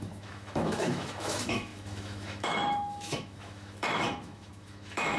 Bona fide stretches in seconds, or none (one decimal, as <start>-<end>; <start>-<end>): none